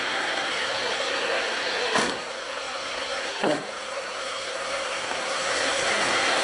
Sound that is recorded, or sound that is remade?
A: remade